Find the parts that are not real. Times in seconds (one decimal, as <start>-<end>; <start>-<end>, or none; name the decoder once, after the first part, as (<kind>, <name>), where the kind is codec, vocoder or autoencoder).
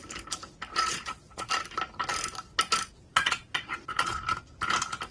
0.7-1.5 (vocoder, Vocos); 2.9-4.2